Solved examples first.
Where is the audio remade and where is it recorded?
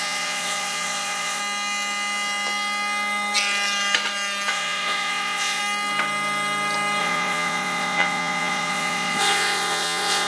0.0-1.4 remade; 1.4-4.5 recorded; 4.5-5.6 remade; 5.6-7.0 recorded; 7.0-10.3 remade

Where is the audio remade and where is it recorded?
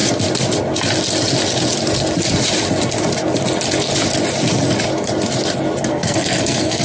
0.0-5.9 recorded; 5.9-6.8 remade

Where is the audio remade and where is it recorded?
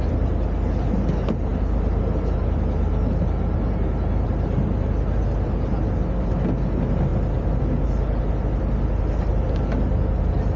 0.0-10.6 recorded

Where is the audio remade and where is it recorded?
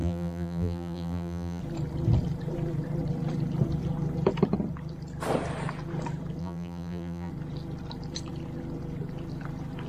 0.0-1.6 remade; 1.6-6.4 recorded; 6.4-7.3 remade; 7.3-9.9 recorded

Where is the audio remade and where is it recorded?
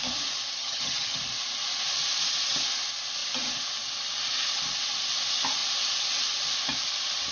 0.0-0.6 recorded; 0.6-1.2 remade; 1.2-7.3 recorded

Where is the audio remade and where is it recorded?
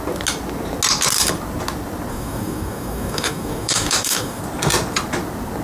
0.0-2.1 recorded; 2.1-4.4 remade; 4.4-5.6 recorded